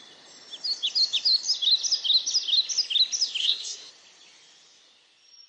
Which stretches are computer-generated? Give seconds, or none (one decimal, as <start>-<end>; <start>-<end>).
3.4-3.9